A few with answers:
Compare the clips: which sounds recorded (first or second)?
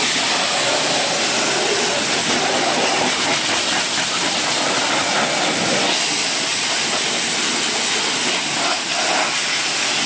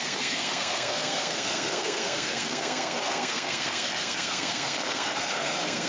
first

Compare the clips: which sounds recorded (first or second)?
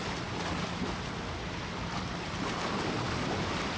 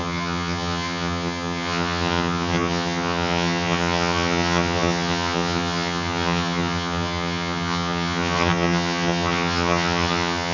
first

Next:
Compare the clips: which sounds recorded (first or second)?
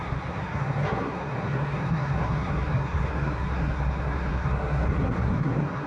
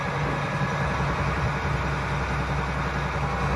second